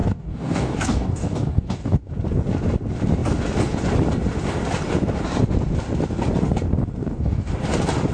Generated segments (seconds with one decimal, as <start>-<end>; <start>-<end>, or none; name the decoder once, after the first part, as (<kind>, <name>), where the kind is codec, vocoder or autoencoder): 0.0-2.1 (codec, DAC); 7.0-7.5